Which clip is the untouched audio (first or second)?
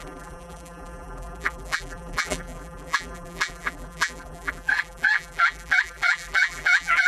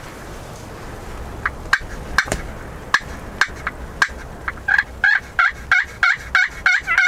second